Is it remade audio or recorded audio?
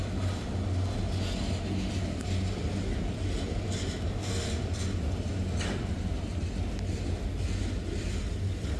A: recorded